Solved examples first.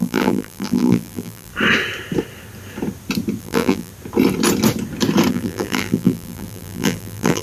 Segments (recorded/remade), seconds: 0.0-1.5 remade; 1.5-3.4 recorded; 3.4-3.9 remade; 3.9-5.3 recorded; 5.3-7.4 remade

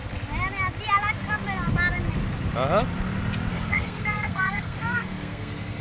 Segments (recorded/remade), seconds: 0.0-3.5 recorded; 3.5-5.8 remade

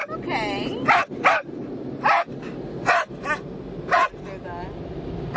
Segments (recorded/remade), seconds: 0.0-5.4 recorded

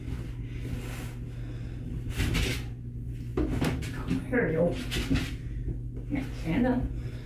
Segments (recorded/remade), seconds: 0.0-7.3 recorded

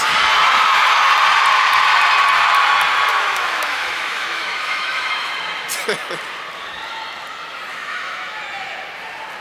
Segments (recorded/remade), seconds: 0.0-3.1 recorded; 3.1-5.3 remade; 5.3-7.7 recorded; 7.7-8.4 remade; 8.4-9.4 recorded

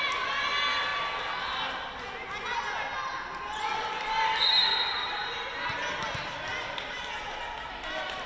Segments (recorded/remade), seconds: 0.0-8.3 recorded